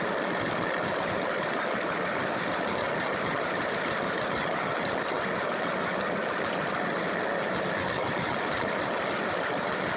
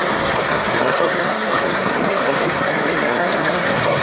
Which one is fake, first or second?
second